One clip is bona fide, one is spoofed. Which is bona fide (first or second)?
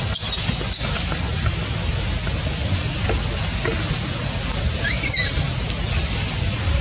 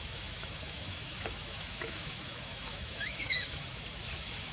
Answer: first